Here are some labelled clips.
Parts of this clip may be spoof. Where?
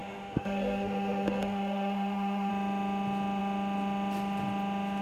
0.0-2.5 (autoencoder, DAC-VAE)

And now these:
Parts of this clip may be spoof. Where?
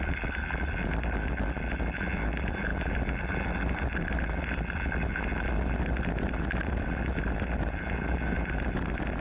none